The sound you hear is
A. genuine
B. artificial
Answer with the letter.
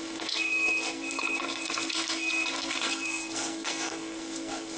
B